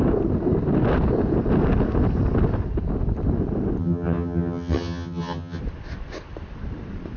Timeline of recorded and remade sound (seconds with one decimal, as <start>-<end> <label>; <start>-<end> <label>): 0.0-3.8 recorded; 3.8-5.6 remade; 5.6-7.2 recorded